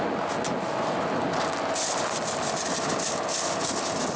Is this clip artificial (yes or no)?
no